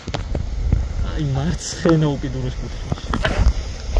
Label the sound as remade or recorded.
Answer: recorded